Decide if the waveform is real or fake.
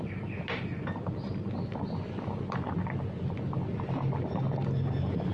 real